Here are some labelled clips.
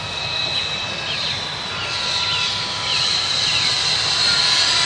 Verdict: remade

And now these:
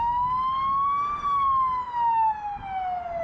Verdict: recorded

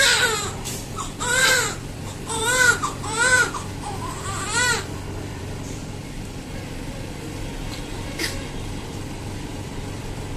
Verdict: remade